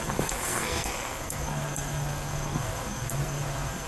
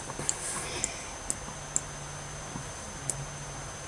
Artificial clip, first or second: first